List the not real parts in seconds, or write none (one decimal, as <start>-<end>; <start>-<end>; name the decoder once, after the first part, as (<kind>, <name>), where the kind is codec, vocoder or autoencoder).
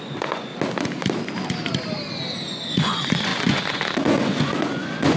0.0-0.5 (vocoder, Vocos); 2.7-5.2